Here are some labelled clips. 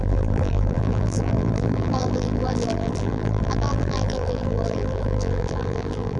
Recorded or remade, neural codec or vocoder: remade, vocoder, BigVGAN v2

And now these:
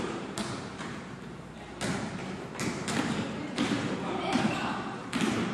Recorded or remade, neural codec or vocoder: remade, vocoder, BigVGAN v2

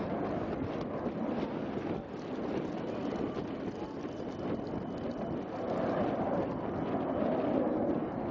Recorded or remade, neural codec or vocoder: recorded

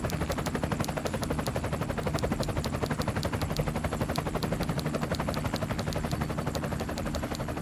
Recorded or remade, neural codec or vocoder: recorded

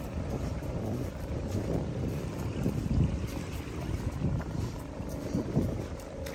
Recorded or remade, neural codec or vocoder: remade, vocoder, BigVGAN v2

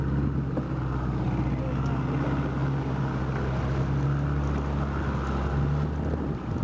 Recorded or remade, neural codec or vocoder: recorded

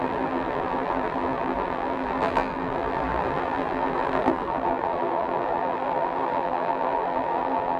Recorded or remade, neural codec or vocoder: remade, vocoder, BigVGAN v2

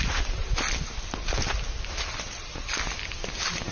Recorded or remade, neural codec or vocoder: recorded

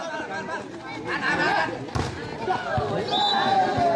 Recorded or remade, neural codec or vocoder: recorded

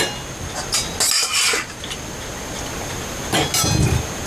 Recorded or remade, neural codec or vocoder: recorded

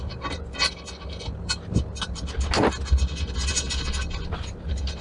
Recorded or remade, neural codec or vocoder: recorded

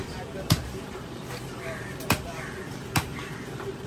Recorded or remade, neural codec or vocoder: remade, vocoder, BigVGAN v2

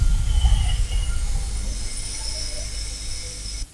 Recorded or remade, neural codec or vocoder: recorded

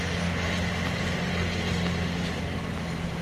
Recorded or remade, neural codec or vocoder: recorded